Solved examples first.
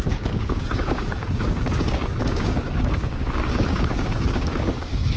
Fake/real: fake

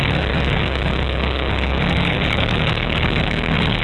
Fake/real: fake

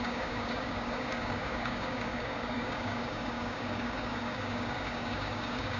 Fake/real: fake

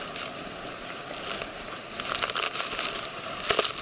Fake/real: real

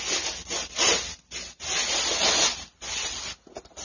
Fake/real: real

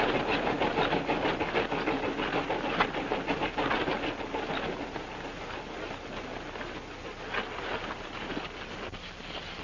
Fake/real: real